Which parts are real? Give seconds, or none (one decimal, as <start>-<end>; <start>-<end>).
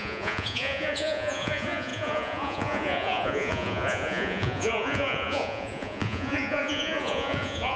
none